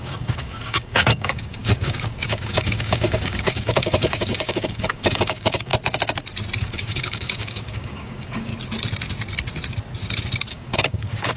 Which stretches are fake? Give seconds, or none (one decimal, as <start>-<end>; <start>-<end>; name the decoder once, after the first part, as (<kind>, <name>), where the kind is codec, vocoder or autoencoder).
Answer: 0.0-5.7 (codec, DAC); 6.6-8.5; 10.5-11.4